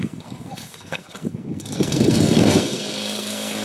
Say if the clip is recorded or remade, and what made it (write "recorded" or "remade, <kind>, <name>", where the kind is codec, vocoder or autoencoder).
remade, codec, SNAC